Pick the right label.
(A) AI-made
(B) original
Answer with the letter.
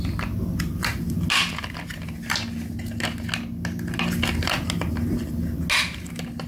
B